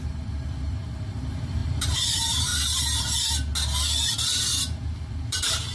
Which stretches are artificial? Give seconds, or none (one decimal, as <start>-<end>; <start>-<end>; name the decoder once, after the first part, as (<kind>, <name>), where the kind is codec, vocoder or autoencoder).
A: 0.0-2.5 (vocoder, BigVGAN v2); 4.6-5.7